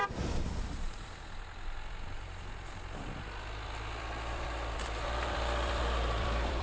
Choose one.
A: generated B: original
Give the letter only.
A